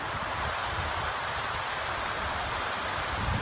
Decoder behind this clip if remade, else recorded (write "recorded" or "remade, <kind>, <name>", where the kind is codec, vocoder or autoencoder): recorded